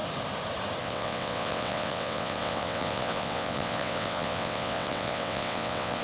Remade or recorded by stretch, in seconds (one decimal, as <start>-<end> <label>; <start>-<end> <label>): 0.0-0.8 recorded; 0.8-6.0 remade